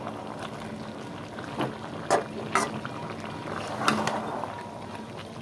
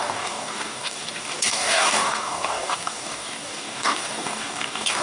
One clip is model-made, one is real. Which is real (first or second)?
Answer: first